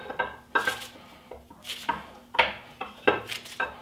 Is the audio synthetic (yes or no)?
no